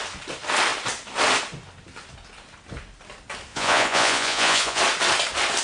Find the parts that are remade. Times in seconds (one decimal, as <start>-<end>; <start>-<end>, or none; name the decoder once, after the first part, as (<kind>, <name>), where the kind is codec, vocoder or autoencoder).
3.5-4.8 (vocoder, Vocos)